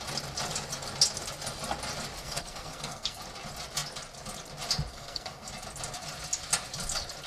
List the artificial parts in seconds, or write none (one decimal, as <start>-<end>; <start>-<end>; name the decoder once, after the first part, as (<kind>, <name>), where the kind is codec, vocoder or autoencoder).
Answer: 2.2-3.2 (codec, SNAC); 4.9-5.5